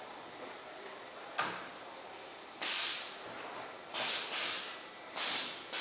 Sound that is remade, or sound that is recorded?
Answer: recorded